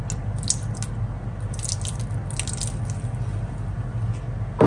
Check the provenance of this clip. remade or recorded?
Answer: recorded